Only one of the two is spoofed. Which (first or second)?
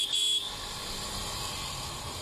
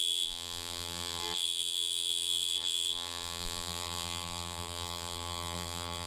second